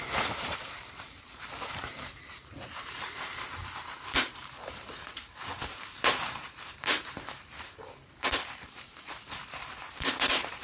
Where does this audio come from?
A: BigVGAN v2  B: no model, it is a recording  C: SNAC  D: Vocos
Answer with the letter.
A